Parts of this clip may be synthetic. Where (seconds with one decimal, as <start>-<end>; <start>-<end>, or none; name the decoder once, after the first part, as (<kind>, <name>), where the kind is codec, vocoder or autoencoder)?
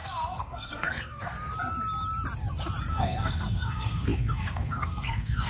0.0-1.3 (codec, SNAC); 2.9-5.5